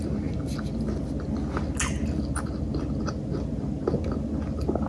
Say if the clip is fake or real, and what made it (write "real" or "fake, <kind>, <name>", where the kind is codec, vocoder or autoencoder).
real